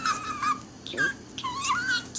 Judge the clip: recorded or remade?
recorded